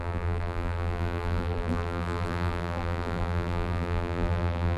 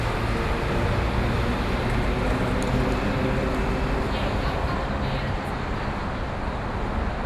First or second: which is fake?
first